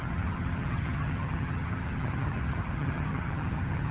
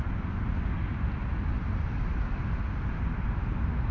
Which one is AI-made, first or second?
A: first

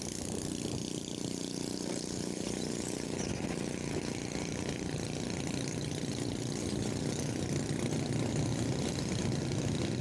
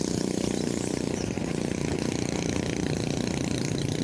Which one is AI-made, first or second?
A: second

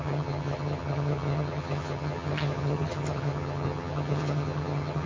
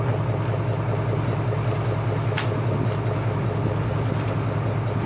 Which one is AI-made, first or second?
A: first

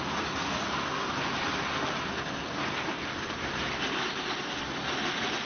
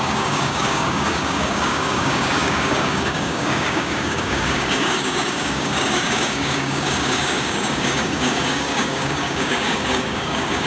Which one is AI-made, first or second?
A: second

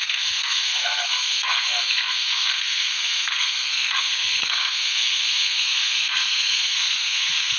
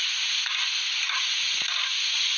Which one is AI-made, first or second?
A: first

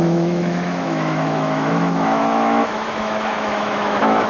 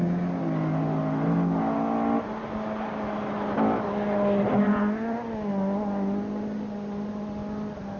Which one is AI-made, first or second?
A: first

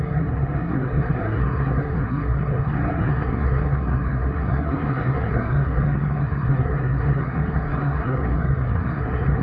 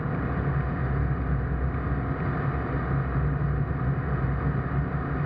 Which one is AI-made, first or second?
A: first